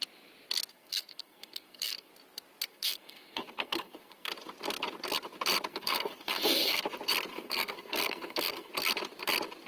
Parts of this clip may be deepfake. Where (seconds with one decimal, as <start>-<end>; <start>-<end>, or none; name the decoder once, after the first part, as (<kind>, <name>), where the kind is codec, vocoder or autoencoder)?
0.7-2.1 (codec, SNAC); 2.7-4.3; 5.7-6.8; 7.3-8.7